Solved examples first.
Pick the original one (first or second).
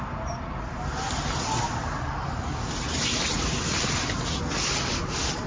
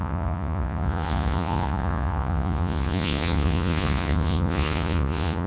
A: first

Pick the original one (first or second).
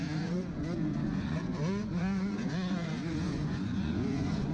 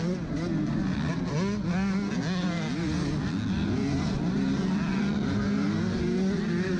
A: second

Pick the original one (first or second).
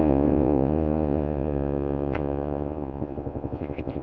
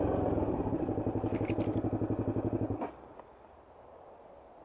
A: second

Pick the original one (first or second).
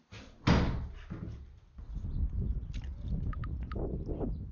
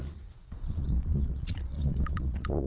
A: first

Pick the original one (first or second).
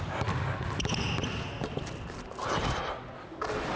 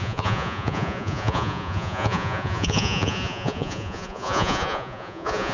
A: first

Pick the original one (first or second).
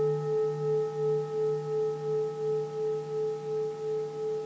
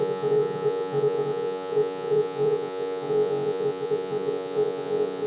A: first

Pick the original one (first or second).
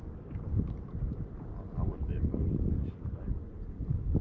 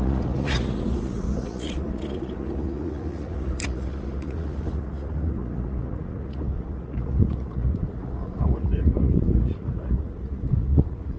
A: first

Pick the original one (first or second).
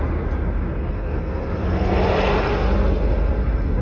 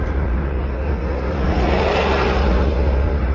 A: first